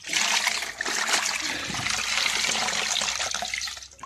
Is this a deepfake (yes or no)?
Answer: no